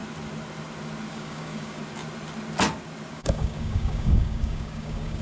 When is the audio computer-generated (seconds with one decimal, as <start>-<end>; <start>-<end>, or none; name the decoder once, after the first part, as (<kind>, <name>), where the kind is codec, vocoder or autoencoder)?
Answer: 1.1-1.8 (codec, DAC); 3.1-5.2